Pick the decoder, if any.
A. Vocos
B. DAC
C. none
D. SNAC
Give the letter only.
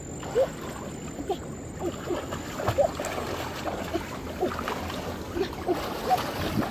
C